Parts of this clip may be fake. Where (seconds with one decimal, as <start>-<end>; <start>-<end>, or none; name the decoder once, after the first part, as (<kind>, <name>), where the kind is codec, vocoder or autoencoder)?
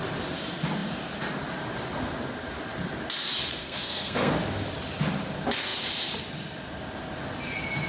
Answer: 3.6-4.4 (codec, SNAC)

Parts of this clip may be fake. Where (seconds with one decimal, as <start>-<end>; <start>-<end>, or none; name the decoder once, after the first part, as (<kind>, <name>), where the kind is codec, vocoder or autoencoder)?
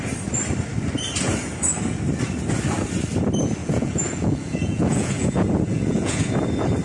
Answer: 3.6-6.3 (vocoder, Vocos)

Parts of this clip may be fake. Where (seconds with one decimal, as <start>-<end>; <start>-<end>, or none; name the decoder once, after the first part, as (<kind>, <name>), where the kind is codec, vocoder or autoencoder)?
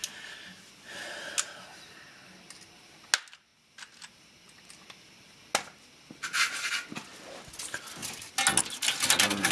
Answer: none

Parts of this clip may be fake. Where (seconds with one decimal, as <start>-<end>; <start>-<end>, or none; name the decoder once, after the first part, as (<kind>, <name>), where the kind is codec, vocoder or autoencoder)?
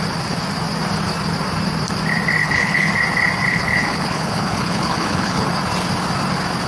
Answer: 2.4-2.9 (codec, HILCodec); 3.5-5.5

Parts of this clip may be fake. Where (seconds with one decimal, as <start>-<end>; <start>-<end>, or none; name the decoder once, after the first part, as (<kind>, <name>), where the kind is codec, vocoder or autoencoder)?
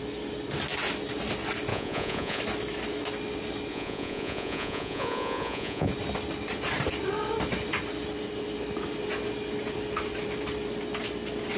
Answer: 1.7-2.4 (vocoder, Vocos); 3.7-5.9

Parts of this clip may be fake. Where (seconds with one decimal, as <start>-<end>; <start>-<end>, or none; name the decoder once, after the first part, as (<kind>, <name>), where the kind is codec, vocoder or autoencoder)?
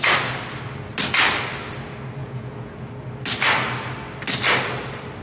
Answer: 2.2-2.9 (vocoder, Vocos)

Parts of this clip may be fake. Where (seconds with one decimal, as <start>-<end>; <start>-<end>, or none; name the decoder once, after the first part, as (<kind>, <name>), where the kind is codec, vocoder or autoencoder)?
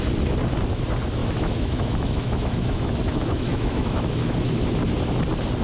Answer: 1.2-4.6 (autoencoder, DAC-VAE)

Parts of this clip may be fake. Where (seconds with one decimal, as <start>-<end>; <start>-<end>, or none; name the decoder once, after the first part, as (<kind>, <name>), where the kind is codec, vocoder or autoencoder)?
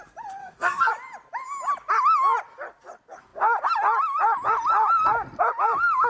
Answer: 0.4-0.9 (codec, SNAC)